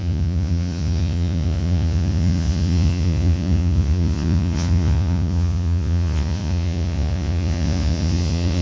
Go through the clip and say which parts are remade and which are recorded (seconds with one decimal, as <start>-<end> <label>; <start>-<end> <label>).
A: 0.0-8.6 remade